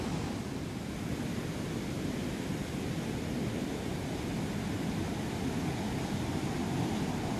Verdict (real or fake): real